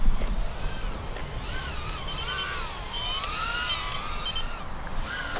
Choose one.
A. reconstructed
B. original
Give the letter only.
B